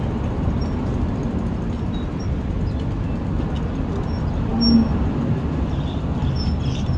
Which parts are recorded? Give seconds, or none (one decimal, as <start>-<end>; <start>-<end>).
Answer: 0.0-7.0